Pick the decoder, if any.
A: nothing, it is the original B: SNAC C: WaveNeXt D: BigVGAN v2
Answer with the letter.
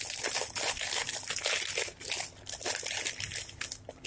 A